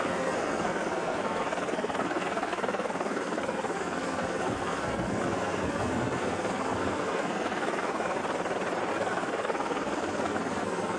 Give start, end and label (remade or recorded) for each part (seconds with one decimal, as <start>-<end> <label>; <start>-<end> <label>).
0.0-8.2 remade; 8.2-8.9 recorded; 8.9-11.0 remade